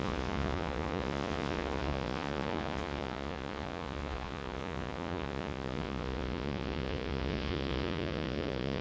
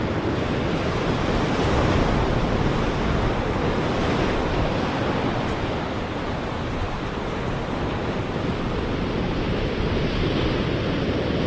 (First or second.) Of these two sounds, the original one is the second